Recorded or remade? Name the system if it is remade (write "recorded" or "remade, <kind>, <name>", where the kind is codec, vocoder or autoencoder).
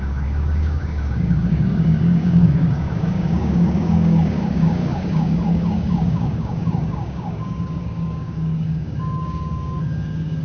remade, codec, DAC